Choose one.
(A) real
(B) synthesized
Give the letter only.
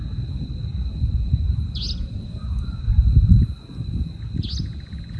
A